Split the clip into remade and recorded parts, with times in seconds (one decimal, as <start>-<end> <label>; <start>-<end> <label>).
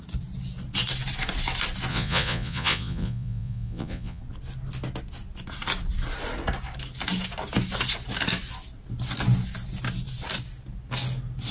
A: 0.0-1.9 recorded; 1.9-4.2 remade; 4.2-11.5 recorded